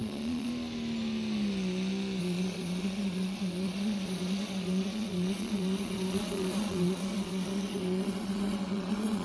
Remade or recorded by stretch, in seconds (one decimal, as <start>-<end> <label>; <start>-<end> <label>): 0.0-0.5 remade; 0.5-2.2 recorded; 2.2-9.2 remade